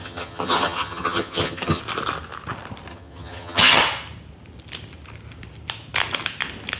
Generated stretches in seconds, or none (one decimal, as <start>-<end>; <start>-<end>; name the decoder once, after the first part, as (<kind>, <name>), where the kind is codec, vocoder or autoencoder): 0.0-1.8 (vocoder, HiFi-GAN); 2.9-3.8